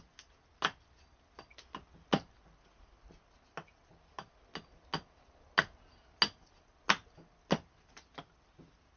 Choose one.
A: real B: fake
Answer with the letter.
A